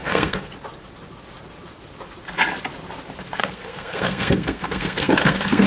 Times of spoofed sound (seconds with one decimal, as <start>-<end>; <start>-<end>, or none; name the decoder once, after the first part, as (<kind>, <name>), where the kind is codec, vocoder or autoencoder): 0.0-0.5 (codec, SNAC); 3.4-5.7